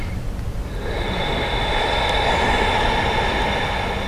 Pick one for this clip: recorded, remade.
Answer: recorded